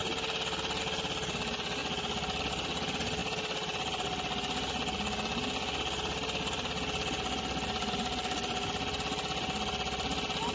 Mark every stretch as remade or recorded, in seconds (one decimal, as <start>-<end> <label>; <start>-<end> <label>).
0.0-10.5 recorded